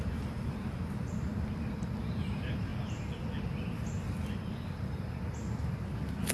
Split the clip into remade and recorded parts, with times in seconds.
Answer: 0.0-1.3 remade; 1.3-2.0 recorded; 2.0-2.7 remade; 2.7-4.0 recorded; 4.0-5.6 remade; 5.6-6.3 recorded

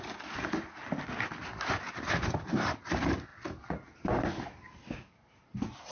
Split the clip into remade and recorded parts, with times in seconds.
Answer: 0.0-5.9 recorded

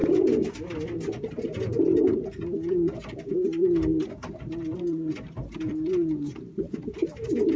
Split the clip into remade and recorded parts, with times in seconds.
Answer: 0.0-4.6 recorded; 4.6-7.6 remade

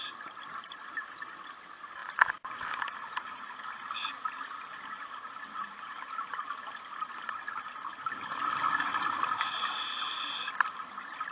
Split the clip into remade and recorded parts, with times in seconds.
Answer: 0.0-11.3 recorded

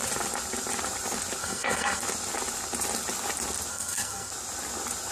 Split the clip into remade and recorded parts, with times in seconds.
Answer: 0.0-1.4 recorded; 1.4-2.0 remade; 2.0-3.7 recorded; 3.7-4.3 remade; 4.3-5.1 recorded

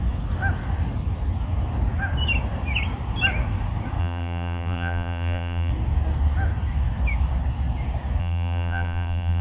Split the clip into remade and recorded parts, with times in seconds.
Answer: 0.0-4.0 recorded; 4.0-5.7 remade; 5.7-8.2 recorded; 8.2-9.4 remade